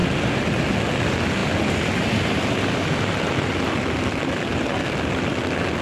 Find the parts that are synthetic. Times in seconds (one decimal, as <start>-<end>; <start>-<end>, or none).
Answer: none

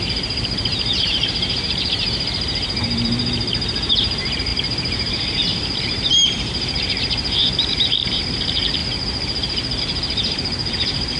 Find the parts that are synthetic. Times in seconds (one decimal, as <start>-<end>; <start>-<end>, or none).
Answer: 0.0-11.2

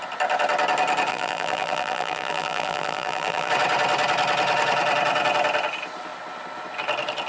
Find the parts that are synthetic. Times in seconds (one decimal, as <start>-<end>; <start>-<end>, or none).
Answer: 1.1-3.5

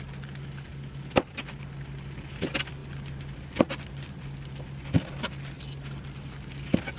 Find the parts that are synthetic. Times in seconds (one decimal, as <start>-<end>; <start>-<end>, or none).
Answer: 0.7-1.5; 2.8-7.0